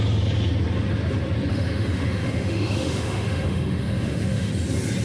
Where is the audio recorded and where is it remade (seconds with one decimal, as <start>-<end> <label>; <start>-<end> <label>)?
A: 0.0-1.5 recorded; 1.5-4.5 remade; 4.5-5.0 recorded